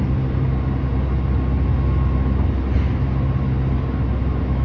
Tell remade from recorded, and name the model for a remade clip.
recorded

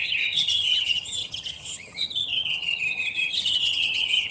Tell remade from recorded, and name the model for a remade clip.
remade, vocoder, HiFi-GAN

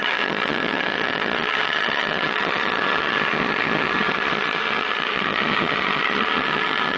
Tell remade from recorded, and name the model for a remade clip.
remade, vocoder, HiFi-GAN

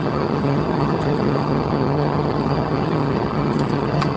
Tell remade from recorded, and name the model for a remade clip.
remade, vocoder, HiFi-GAN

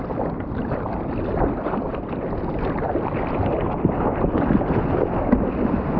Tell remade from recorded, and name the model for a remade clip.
recorded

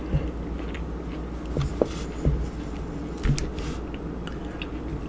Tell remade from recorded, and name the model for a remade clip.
recorded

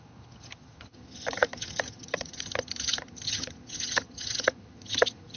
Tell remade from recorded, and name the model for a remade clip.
remade, vocoder, HiFi-GAN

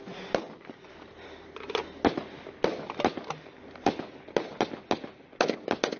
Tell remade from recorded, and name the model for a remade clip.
recorded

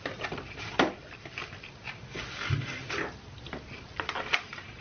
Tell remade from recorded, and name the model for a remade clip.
recorded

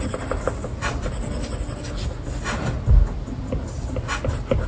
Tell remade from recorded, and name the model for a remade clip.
recorded